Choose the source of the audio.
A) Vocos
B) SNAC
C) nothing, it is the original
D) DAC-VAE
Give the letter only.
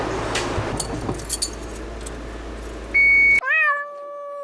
C